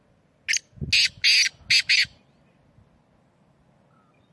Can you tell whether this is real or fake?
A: real